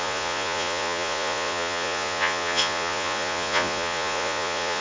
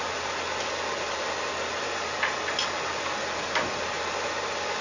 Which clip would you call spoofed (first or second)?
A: first